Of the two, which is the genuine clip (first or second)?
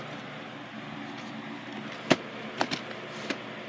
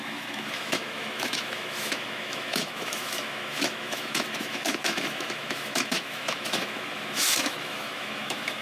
first